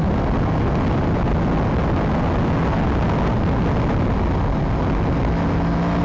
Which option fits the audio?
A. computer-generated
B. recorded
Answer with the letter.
B